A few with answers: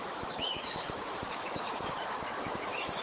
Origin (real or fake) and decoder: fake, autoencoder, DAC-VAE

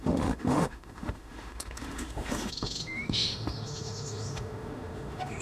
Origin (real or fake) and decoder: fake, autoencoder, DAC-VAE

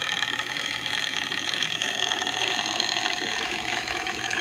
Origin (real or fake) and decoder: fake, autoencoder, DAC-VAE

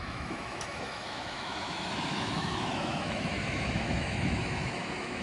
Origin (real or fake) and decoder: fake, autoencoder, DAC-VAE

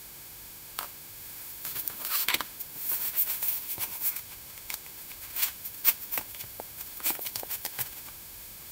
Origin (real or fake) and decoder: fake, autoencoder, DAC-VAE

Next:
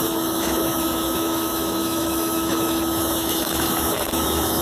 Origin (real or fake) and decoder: fake, autoencoder, DAC-VAE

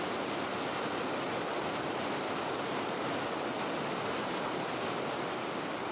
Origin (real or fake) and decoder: real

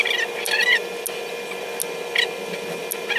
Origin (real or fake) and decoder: real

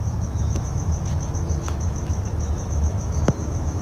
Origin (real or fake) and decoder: fake, autoencoder, DAC-VAE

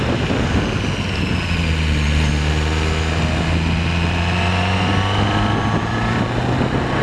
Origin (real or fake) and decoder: real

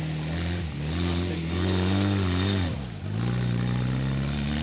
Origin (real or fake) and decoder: real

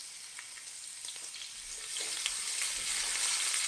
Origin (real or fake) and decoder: real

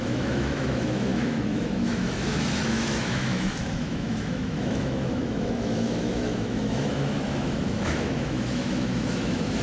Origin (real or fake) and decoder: fake, autoencoder, DAC-VAE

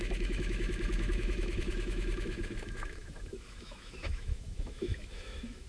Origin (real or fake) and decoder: fake, autoencoder, DAC-VAE